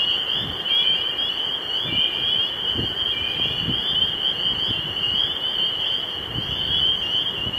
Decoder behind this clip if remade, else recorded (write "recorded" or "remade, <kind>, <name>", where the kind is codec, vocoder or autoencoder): recorded